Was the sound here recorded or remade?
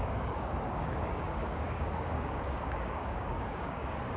remade